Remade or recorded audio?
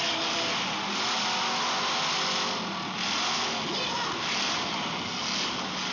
recorded